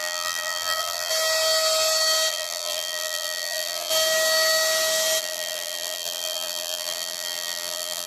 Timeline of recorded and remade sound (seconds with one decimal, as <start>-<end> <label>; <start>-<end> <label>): 0.0-1.1 remade; 1.1-2.3 recorded; 2.3-3.9 remade; 3.9-5.2 recorded; 5.2-8.1 remade